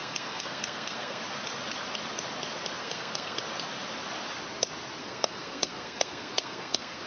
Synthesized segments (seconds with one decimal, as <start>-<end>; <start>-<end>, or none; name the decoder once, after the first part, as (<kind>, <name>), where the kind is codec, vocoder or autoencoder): 0.0-1.2 (codec, SNAC); 2.8-3.4; 5.0-7.1

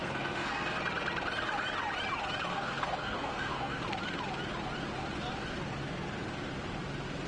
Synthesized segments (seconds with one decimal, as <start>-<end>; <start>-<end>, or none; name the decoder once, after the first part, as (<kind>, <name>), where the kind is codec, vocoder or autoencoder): 0.0-0.8 (codec, SNAC); 2.5-3.8

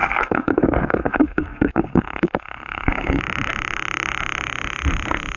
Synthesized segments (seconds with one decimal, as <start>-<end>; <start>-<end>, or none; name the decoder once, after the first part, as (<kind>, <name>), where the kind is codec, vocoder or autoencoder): 0.0-3.2 (codec, SNAC)

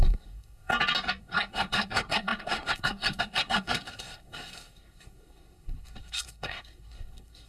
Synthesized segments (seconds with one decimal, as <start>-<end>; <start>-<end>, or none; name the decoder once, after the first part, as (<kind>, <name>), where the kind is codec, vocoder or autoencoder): 0.0-0.7 (codec, SNAC); 1.2-7.5

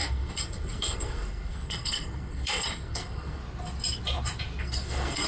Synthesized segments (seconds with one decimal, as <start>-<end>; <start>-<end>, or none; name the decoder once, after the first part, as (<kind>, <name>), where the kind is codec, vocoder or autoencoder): 0.0-3.4 (codec, SNAC); 4.6-5.3

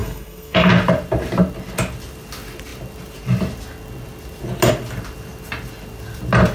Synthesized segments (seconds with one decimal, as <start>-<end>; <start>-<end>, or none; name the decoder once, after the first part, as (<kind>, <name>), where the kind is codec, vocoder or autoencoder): 0.0-0.7 (codec, SNAC)

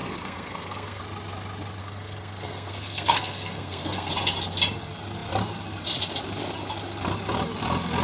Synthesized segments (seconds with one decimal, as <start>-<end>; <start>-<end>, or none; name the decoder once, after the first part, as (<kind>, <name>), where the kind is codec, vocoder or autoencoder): 0.0-1.0 (codec, SNAC); 1.8-4.1

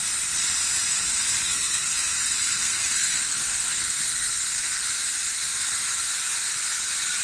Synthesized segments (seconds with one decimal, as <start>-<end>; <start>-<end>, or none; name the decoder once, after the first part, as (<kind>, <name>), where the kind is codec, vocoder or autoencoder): 0.9-4.8 (codec, SNAC)